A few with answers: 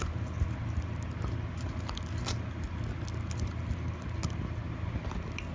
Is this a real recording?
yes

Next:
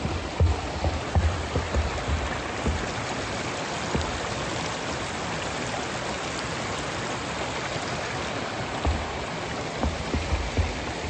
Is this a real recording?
yes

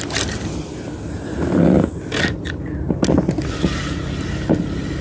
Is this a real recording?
yes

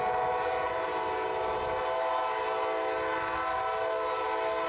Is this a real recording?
yes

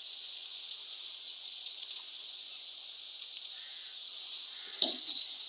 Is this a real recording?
no